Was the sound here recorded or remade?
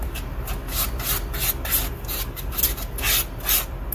recorded